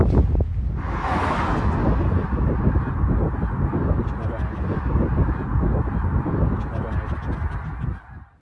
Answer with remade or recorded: recorded